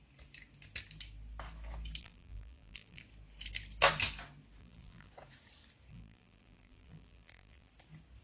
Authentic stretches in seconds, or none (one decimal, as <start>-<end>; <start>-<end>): 0.0-2.0; 3.0-4.6; 5.1-5.9; 7.7-8.2